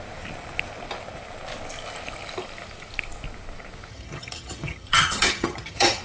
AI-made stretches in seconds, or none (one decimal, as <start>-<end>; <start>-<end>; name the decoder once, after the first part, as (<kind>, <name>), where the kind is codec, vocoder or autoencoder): 3.9-6.0 (vocoder, HiFi-GAN)